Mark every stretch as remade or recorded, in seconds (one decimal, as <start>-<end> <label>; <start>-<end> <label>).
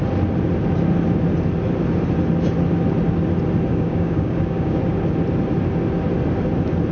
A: 0.0-3.7 recorded; 3.7-4.8 remade; 4.8-6.9 recorded